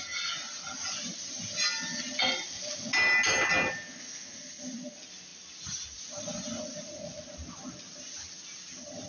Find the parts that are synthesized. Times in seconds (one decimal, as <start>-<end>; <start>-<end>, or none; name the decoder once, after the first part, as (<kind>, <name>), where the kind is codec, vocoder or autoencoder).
none

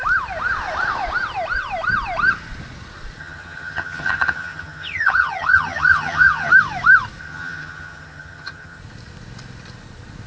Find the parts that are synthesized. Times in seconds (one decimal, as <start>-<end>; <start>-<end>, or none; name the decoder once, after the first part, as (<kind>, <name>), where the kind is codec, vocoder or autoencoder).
3.2-6.5 (vocoder, HiFi-GAN); 7.2-8.8

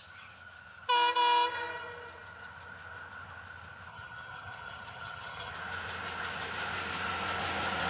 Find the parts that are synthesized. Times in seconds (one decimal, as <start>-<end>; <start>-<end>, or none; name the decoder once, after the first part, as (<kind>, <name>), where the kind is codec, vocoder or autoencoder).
3.9-5.5 (vocoder, HiFi-GAN)

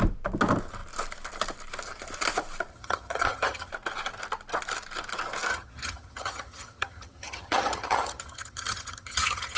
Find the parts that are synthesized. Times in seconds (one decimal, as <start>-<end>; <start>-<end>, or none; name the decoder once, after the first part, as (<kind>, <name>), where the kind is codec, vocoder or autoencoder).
2.7-3.7 (vocoder, HiFi-GAN); 5.5-9.6

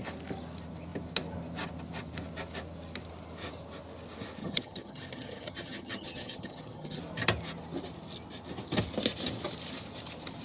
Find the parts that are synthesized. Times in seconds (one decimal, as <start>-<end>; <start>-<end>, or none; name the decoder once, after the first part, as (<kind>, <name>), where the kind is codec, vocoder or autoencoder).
4.4-7.0 (vocoder, HiFi-GAN)